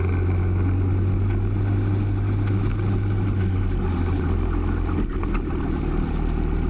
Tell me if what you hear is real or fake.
real